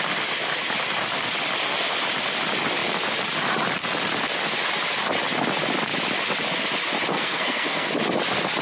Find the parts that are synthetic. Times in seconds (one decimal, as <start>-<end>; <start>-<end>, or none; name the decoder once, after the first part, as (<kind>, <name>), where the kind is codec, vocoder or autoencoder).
7.1-7.9 (codec, SNAC)